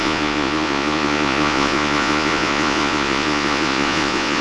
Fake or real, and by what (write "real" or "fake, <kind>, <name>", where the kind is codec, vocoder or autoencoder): fake, vocoder, Vocos